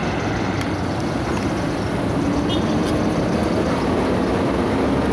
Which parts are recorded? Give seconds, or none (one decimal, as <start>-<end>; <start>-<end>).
0.0-5.1